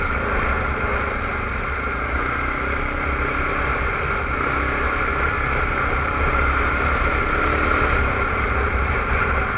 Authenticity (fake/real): real